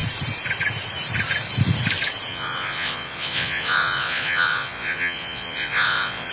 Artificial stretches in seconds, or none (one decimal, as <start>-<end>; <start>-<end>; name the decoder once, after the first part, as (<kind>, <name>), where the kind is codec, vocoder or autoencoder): 2.3-6.3 (vocoder, Vocos)